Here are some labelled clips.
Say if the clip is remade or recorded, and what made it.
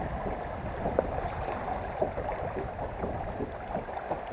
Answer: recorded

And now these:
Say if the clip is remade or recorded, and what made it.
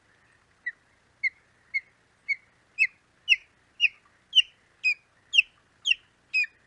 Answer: recorded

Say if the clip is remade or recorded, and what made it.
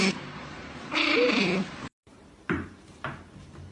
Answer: remade, vocoder, BigVGAN v2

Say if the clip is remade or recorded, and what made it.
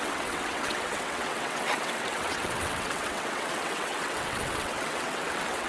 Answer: remade, vocoder, WaveNeXt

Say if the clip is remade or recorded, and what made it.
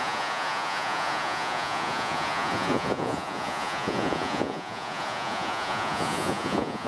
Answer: remade, vocoder, Vocos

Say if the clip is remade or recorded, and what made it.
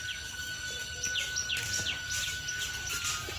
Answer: recorded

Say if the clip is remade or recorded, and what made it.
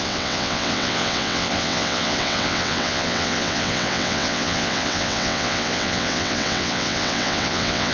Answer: remade, vocoder, WaveNeXt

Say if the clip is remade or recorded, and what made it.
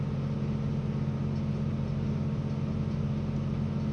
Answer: recorded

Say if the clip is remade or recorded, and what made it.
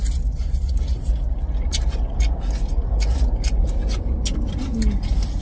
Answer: recorded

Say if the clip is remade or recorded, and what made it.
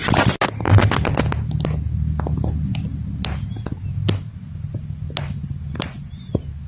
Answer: recorded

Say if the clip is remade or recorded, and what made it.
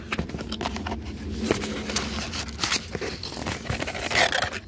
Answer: recorded